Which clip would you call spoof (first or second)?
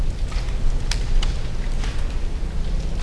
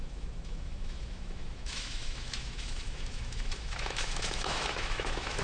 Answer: second